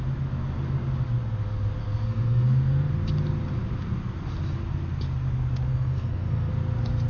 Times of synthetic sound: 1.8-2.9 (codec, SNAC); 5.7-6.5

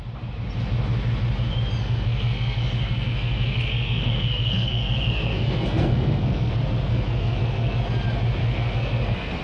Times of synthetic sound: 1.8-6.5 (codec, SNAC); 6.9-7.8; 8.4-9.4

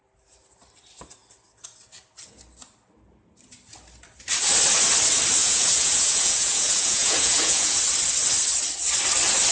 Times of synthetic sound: 5.4-7.8 (vocoder, Vocos)

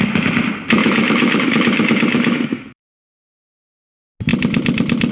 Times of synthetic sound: 0.8-3.9 (autoencoder, DAC-VAE)

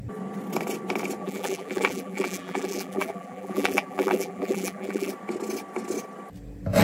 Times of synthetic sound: 1.2-5.1 (vocoder, BigVGAN v2)